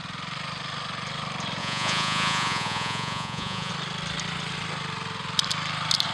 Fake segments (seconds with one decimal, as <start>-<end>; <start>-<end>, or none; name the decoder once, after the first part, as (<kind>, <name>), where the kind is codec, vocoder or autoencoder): 1.6-3.7 (vocoder, Vocos)